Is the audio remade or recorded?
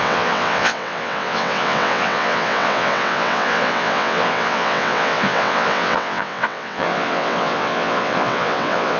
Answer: remade